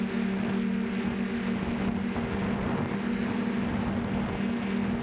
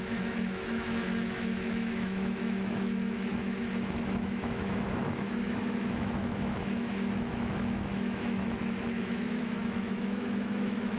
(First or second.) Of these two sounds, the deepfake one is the second